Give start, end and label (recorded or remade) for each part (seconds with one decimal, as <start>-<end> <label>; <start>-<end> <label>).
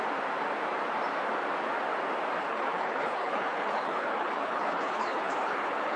0.0-2.4 recorded; 2.4-6.0 remade